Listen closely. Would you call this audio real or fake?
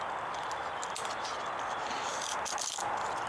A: real